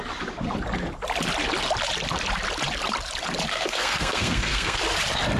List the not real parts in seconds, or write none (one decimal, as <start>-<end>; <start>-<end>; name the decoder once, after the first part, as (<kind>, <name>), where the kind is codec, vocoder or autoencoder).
3.5-4.8 (codec, SNAC)

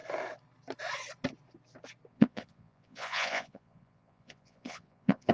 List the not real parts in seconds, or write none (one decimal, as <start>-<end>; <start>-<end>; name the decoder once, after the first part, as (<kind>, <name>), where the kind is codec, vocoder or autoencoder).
2.1-5.3 (vocoder, Vocos)

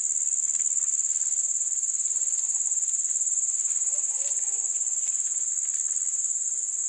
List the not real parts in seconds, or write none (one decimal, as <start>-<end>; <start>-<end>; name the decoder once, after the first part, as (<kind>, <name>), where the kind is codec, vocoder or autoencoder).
1.4-5.5 (vocoder, BigVGAN v2); 6.1-6.9

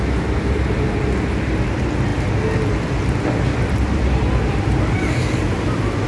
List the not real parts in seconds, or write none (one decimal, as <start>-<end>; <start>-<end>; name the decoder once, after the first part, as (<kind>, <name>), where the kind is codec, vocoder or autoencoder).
none

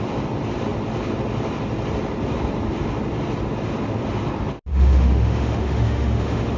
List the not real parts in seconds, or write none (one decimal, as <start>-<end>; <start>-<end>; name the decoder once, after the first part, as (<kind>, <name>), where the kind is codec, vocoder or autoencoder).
4.7-6.6 (autoencoder, DAC-VAE)

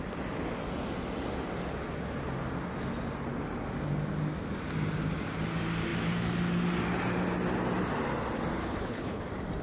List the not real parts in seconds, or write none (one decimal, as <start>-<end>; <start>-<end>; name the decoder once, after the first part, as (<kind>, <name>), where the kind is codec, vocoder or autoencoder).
8.6-9.2 (codec, HILCodec)

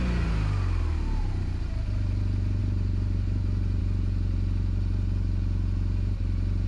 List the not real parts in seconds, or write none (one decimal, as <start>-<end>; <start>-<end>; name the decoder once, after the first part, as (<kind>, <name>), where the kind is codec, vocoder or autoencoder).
none

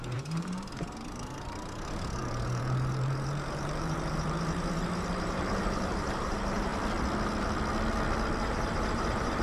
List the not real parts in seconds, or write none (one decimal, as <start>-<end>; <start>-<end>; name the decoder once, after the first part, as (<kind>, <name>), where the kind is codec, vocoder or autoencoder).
0.0-6.7 (vocoder, BigVGAN v2); 8.4-9.4